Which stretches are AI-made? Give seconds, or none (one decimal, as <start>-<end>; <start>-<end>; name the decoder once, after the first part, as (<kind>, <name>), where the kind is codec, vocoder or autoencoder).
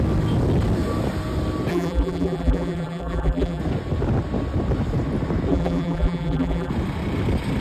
1.7-3.6 (vocoder, BigVGAN v2); 5.5-6.7